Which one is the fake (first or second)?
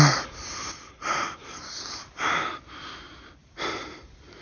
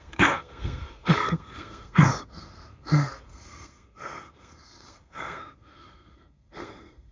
second